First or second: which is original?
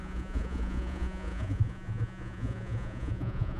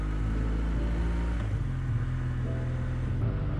second